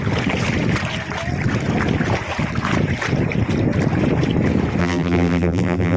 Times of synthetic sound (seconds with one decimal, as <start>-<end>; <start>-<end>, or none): 4.8-6.0